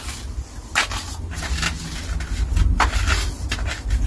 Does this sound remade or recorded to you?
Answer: recorded